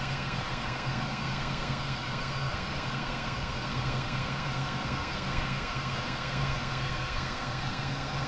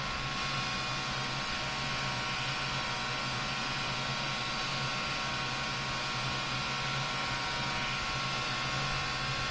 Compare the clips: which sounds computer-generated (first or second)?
first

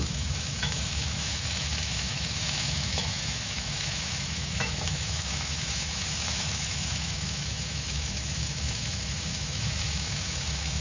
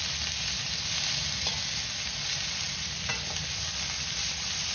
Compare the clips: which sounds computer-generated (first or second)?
first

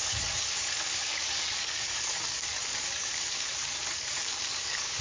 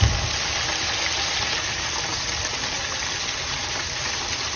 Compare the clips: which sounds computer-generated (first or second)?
first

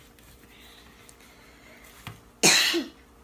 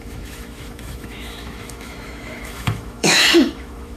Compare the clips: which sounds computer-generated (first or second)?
second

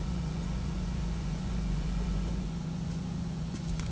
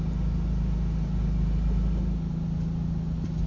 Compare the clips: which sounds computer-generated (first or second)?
first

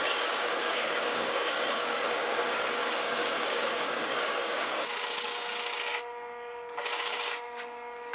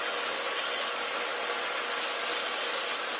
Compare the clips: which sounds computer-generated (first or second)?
first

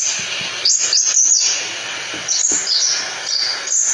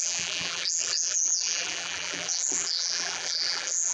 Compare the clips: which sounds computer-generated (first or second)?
second